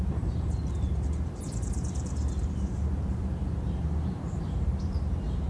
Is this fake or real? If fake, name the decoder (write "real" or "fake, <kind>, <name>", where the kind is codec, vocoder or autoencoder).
fake, vocoder, BigVGAN v2